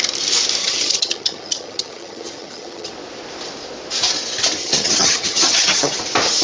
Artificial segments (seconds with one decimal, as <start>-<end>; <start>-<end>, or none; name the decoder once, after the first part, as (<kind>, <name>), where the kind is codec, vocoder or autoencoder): 0.6-2.9 (vocoder, HiFi-GAN); 4.6-6.0